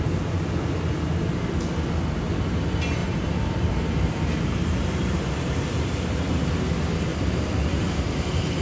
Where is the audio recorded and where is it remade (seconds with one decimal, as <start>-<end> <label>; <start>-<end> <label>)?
0.0-3.0 recorded; 3.0-6.3 remade; 6.3-7.1 recorded; 7.1-8.6 remade